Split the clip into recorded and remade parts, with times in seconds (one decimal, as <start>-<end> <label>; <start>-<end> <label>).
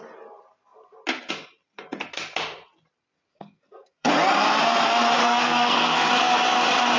0.0-3.3 recorded; 3.3-4.1 remade; 4.1-5.2 recorded; 5.2-6.1 remade; 6.1-7.0 recorded